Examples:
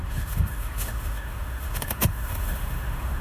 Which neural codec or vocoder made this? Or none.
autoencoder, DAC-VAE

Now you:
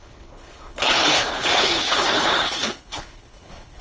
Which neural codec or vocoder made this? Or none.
codec, HILCodec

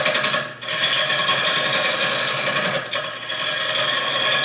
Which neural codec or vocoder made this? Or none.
none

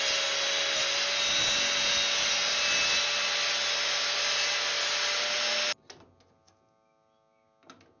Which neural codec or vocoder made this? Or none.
none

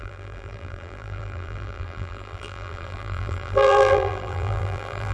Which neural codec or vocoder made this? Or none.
vocoder, BigVGAN v2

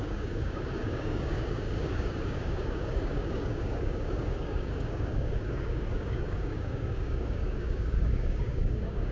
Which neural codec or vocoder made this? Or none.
codec, DAC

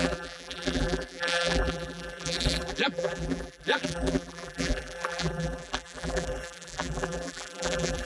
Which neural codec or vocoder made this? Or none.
vocoder, BigVGAN v2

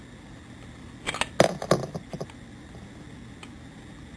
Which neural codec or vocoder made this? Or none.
none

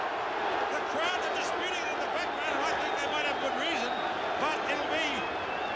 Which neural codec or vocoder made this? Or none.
none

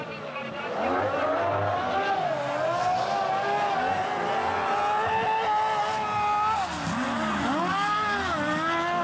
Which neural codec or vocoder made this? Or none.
none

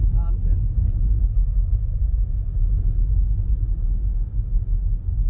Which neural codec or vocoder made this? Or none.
none